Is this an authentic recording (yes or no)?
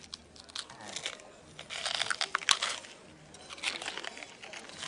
yes